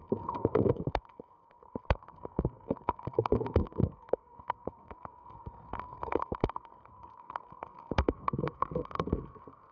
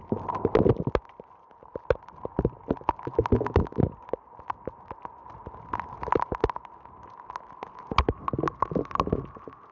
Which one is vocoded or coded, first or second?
first